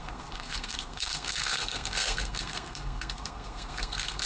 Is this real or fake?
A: fake